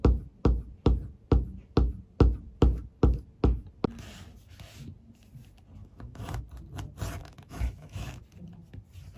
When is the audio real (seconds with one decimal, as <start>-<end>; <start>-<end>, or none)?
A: 0.0-5.8; 6.4-7.2; 8.2-9.2